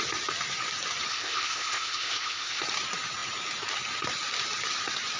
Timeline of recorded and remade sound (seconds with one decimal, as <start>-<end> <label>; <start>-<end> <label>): 0.0-1.1 recorded; 1.1-2.6 remade; 2.6-5.2 recorded